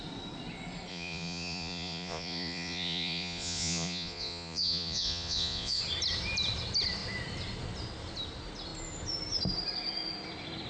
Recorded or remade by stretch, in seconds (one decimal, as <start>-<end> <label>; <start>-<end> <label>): 0.0-0.9 recorded; 0.9-5.8 remade; 5.8-10.7 recorded